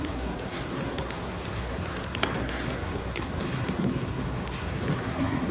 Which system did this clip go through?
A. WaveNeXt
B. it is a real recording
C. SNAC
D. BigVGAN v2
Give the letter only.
C